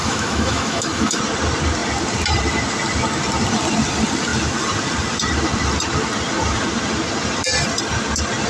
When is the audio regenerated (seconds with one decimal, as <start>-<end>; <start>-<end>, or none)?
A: 0.0-1.2

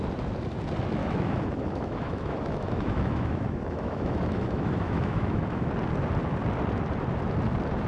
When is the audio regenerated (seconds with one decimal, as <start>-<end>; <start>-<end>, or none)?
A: 1.0-5.7

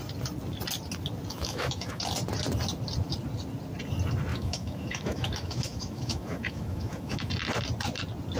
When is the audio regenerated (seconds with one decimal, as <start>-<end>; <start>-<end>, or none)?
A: 1.3-2.0; 4.3-7.3

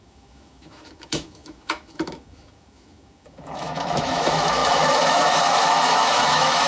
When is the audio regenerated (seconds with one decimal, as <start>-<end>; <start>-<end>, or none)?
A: 0.0-6.7

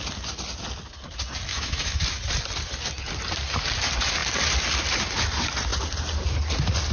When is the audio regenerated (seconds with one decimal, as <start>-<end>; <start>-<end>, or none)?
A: 1.5-2.0